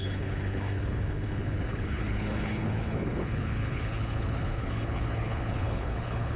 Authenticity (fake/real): fake